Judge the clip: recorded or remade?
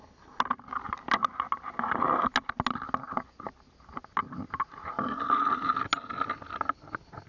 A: recorded